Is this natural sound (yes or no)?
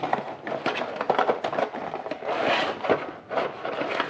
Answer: yes